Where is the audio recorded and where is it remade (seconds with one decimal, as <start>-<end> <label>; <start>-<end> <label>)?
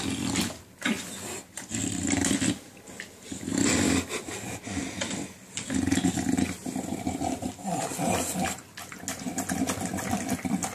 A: 0.0-10.7 recorded